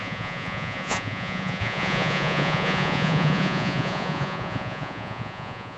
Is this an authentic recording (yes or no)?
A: no